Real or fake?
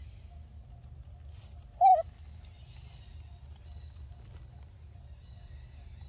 real